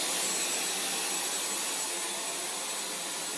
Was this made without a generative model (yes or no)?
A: yes